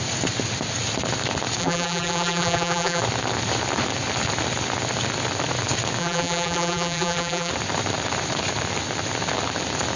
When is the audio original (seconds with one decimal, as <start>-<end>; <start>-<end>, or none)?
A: 0.0-1.6; 3.0-6.0; 7.5-10.0